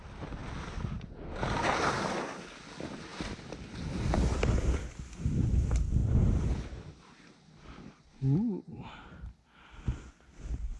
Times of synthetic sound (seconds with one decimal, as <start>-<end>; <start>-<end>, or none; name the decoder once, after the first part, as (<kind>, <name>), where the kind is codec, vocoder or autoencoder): 3.1-3.9 (vocoder, BigVGAN v2)